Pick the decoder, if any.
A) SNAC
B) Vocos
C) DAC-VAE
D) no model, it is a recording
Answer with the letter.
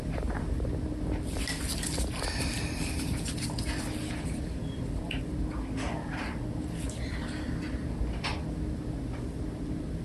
D